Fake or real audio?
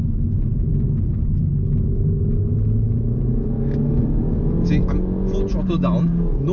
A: real